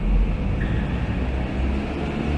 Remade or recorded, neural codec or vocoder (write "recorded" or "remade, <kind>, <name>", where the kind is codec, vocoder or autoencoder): recorded